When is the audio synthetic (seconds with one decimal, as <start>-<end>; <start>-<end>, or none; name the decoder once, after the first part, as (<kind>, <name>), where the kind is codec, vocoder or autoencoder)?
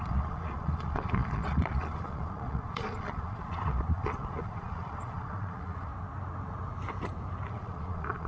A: 0.0-5.9 (vocoder, Vocos); 7.5-8.3